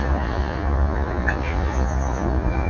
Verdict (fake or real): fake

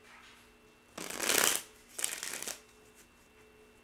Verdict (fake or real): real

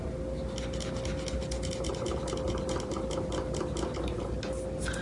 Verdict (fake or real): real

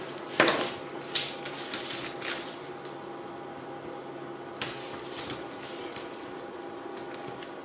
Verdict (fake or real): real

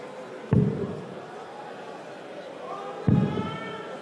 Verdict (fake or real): real